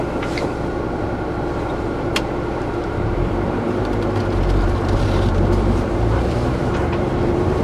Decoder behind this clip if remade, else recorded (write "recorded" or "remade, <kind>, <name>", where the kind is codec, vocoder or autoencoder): remade, vocoder, BigVGAN v2